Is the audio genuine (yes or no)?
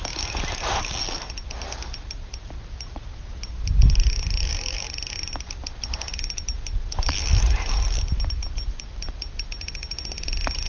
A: yes